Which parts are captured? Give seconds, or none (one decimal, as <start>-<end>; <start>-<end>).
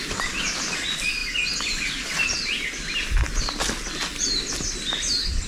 0.0-5.5